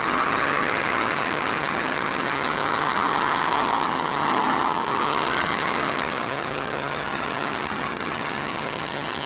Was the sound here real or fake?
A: fake